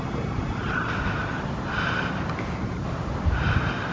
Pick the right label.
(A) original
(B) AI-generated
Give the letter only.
A